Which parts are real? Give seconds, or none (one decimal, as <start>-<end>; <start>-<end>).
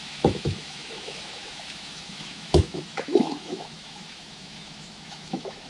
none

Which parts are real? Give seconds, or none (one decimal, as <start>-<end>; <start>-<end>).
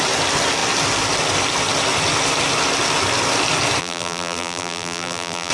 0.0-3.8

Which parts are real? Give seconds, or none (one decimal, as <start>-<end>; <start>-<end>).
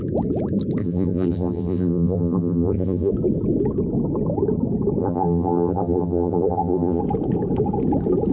0.0-0.8; 3.1-5.0; 7.0-8.3